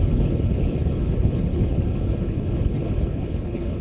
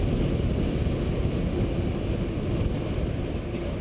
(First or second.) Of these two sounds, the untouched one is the second